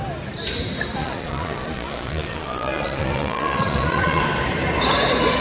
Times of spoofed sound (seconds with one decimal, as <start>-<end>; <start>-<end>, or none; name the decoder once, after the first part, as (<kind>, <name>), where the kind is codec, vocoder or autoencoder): 1.0-4.2 (vocoder, Vocos)